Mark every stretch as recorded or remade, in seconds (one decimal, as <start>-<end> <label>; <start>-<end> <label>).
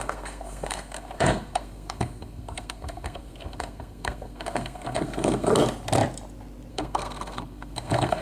0.0-5.5 remade; 5.5-6.7 recorded; 6.7-8.2 remade